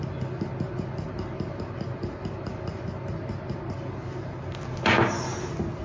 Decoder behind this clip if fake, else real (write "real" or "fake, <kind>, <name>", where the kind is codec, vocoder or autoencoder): real